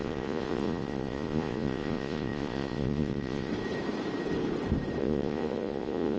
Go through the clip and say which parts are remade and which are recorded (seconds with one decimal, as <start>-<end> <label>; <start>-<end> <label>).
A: 0.0-3.5 remade; 3.5-5.0 recorded; 5.0-6.2 remade